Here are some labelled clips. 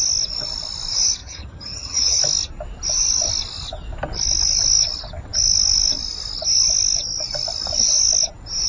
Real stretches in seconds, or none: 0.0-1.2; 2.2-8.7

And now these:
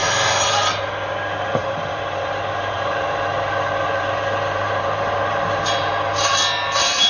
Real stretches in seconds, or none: 0.0-1.6; 5.9-7.1